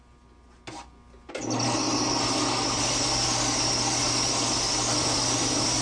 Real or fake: real